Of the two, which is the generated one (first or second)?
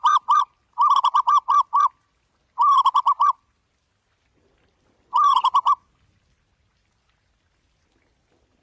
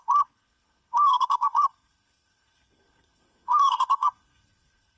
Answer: second